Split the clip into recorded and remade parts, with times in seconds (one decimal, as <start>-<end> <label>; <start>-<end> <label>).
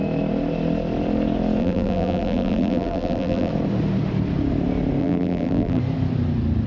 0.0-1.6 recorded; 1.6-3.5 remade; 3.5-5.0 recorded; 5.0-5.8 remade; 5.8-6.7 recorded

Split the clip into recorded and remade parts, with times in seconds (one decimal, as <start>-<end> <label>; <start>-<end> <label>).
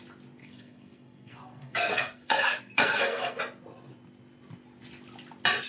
0.0-0.4 recorded; 0.4-3.4 remade; 3.4-5.7 recorded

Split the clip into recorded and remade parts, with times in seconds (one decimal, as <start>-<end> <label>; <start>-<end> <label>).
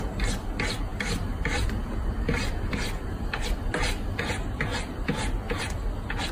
0.0-0.9 recorded; 0.9-4.2 remade; 4.2-4.7 recorded; 4.7-5.6 remade; 5.6-6.3 recorded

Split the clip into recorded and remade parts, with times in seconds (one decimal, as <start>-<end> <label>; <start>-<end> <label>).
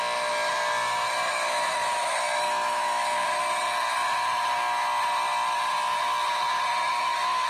0.0-1.3 recorded; 1.3-3.5 remade; 3.5-6.7 recorded; 6.7-7.5 remade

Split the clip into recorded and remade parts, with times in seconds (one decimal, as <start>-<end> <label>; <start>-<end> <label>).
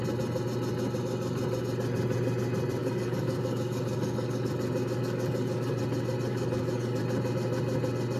0.0-2.8 recorded; 2.8-4.5 remade; 4.5-5.0 recorded; 5.0-5.8 remade; 5.8-6.3 recorded; 6.3-7.0 remade; 7.0-8.2 recorded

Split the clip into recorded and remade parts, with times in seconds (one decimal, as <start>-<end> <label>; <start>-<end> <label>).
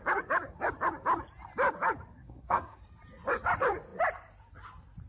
0.0-2.2 recorded; 2.2-2.8 remade; 2.8-5.1 recorded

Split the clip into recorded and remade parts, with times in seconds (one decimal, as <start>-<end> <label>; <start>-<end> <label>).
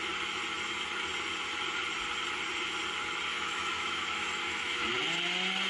0.0-3.3 recorded; 3.3-4.9 remade; 4.9-5.7 recorded